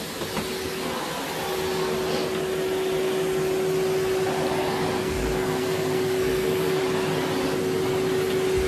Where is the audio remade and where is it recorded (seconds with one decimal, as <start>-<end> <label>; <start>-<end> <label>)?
0.0-5.0 recorded; 5.0-6.8 remade; 6.8-8.7 recorded